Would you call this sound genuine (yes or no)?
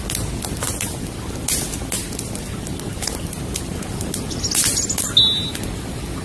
yes